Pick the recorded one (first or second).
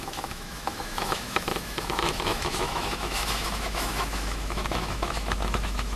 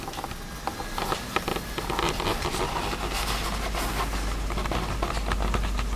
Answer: second